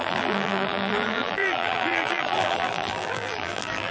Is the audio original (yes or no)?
no